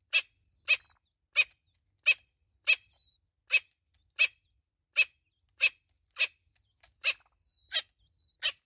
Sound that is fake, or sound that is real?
real